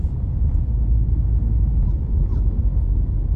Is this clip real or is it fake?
real